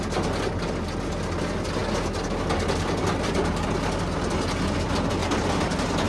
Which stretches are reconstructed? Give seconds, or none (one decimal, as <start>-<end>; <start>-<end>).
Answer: none